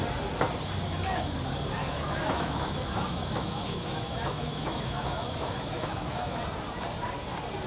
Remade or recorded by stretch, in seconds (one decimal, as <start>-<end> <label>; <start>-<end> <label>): 0.0-1.8 recorded; 1.8-6.4 remade; 6.4-7.7 recorded